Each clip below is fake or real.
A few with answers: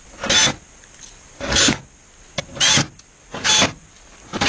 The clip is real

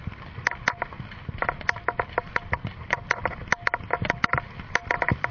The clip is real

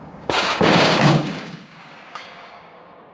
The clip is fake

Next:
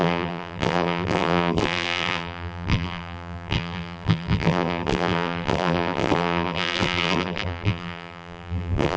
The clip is fake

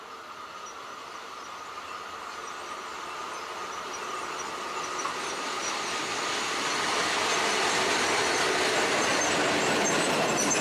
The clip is real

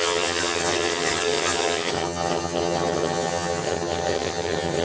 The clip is fake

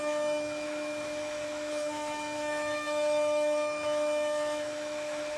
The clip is fake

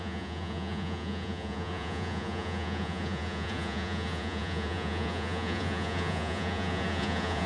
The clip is fake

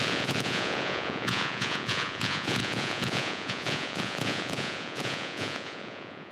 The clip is fake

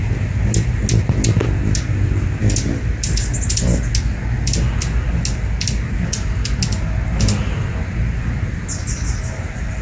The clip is real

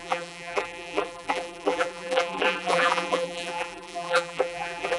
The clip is fake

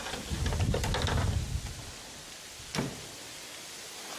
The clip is real